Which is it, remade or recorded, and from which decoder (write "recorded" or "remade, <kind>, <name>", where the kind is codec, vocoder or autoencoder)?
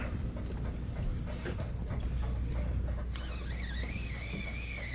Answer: recorded